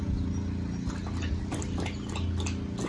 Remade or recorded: recorded